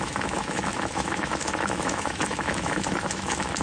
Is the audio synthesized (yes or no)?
yes